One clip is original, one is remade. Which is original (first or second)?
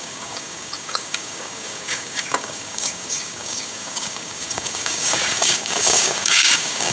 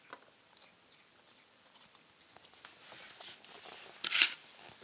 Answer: second